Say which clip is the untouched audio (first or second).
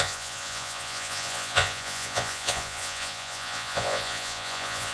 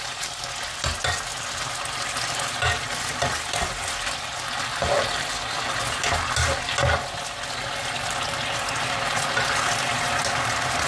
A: second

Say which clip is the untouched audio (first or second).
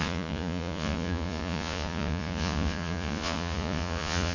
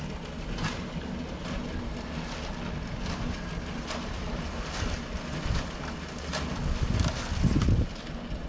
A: second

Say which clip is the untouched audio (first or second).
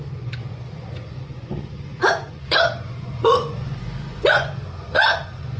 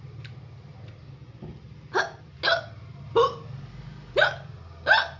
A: second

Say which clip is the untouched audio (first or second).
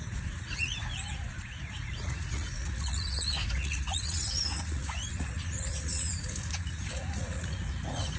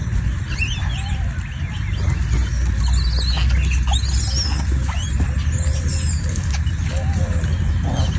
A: second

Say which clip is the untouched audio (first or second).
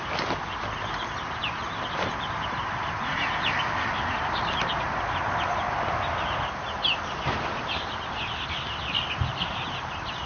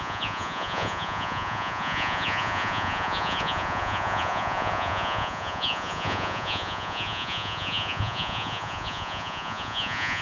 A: first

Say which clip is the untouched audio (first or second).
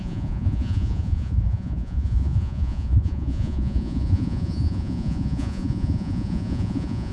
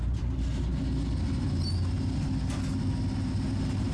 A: second